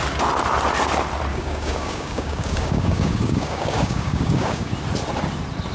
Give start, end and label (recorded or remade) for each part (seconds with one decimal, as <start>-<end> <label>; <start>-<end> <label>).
0.0-1.3 recorded; 1.3-4.7 remade; 4.7-5.7 recorded